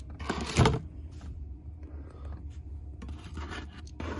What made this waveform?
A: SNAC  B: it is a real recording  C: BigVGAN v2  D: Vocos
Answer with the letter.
B